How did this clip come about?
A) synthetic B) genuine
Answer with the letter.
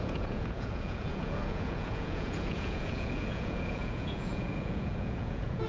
A